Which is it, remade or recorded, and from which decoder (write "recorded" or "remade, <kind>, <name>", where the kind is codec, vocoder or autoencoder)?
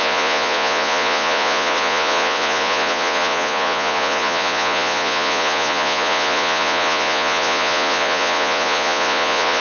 remade, vocoder, Vocos